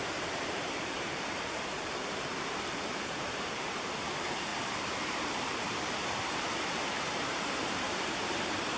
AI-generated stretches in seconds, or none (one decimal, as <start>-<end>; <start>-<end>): 0.0-4.5; 5.3-8.8